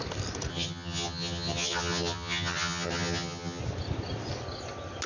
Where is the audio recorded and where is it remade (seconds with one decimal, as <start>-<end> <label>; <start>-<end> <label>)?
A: 0.0-0.5 recorded; 0.5-3.6 remade; 3.6-5.1 recorded